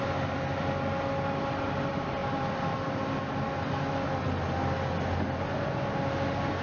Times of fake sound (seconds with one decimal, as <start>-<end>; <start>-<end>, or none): none